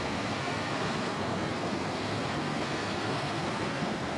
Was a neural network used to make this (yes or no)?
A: yes